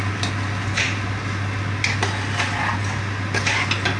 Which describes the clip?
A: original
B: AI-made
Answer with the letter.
A